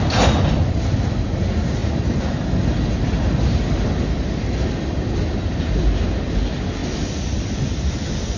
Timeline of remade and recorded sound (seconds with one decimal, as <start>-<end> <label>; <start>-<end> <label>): 0.0-8.4 recorded